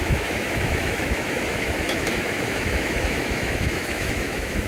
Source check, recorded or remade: remade